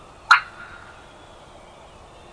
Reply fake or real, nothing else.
real